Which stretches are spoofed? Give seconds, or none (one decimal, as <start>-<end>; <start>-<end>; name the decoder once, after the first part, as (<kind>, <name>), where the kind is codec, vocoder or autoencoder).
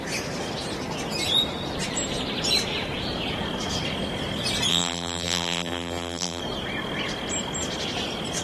4.7-6.4 (vocoder, BigVGAN v2)